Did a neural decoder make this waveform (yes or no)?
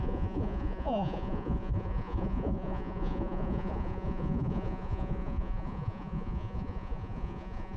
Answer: yes